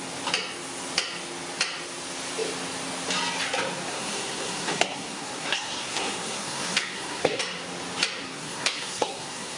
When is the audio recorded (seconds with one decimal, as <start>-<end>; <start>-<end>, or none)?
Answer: 0.0-3.9; 7.4-8.2